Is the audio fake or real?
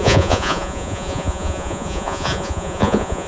fake